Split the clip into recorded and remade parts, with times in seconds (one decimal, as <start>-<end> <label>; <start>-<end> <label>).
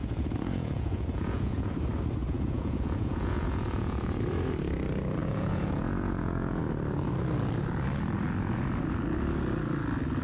0.0-1.7 remade; 1.7-2.2 recorded; 2.2-4.2 remade; 4.2-5.2 recorded; 5.2-6.6 remade; 6.6-10.2 recorded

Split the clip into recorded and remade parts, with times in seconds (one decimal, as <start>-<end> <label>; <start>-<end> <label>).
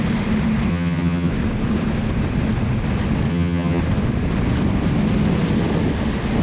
0.0-0.7 recorded; 0.7-1.3 remade; 1.3-3.3 recorded; 3.3-3.8 remade; 3.8-6.4 recorded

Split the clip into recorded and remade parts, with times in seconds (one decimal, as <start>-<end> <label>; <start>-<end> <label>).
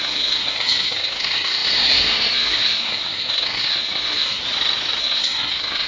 0.0-4.4 remade; 4.4-5.0 recorded; 5.0-5.9 remade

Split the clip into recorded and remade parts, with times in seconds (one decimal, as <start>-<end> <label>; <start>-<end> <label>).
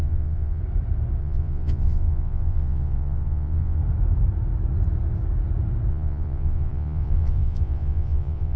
0.0-0.6 remade; 0.6-1.2 recorded; 1.2-3.8 remade; 3.8-5.9 recorded; 5.9-8.6 remade